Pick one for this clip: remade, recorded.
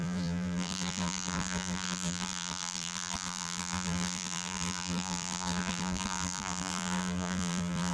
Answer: remade